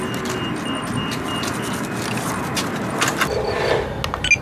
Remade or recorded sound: recorded